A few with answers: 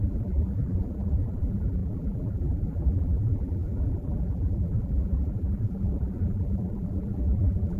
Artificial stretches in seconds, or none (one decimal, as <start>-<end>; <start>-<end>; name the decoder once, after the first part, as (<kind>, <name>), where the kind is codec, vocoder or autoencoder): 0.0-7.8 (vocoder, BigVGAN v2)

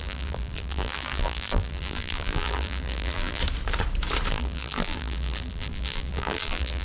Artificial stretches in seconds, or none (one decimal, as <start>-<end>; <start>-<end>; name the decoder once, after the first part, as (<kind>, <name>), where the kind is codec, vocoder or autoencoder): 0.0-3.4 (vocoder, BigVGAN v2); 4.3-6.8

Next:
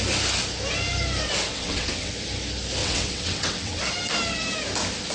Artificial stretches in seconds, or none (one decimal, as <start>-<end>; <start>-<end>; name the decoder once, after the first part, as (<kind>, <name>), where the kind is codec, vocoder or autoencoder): 1.5-2.1 (vocoder, WaveNeXt); 2.8-3.8

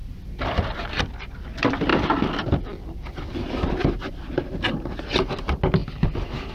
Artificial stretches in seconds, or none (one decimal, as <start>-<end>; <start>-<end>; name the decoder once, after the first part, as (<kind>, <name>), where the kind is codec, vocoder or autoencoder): 0.0-1.0 (vocoder, BigVGAN v2); 1.9-3.8

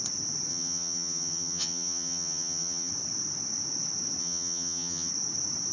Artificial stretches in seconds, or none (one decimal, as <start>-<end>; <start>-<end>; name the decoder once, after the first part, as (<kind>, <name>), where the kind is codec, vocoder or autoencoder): 0.5-2.9 (vocoder, HiFi-GAN); 4.2-5.1